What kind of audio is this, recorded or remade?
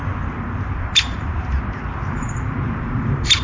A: recorded